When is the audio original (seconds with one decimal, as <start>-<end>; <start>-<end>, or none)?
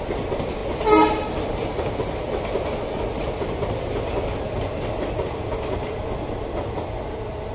0.0-7.5